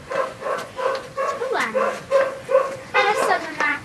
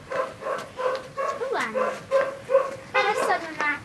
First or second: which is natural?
second